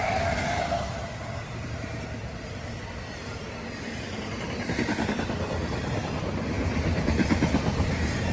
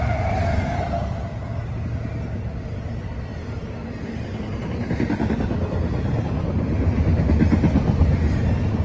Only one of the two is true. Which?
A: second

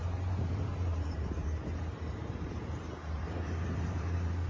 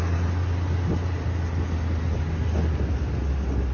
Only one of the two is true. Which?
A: second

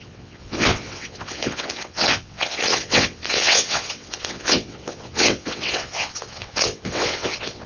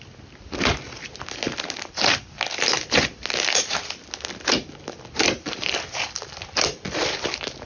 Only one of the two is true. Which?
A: second